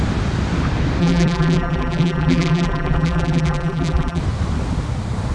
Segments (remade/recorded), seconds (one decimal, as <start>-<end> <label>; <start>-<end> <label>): 0.0-1.0 recorded; 1.0-4.2 remade; 4.2-5.3 recorded